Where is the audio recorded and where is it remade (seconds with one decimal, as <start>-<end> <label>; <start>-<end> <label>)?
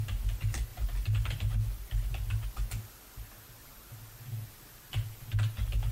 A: 0.0-5.9 recorded